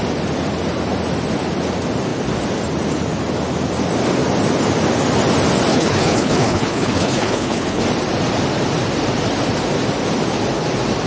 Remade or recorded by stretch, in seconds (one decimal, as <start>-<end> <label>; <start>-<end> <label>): 0.0-5.7 recorded; 5.7-7.8 remade; 7.8-11.1 recorded